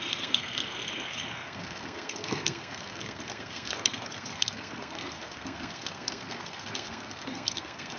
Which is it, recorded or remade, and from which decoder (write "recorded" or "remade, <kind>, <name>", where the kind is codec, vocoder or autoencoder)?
remade, codec, SNAC